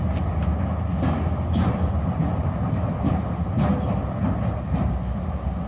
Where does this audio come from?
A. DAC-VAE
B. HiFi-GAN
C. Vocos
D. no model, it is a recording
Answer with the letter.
D